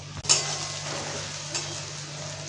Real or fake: real